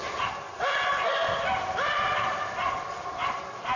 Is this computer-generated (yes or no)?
no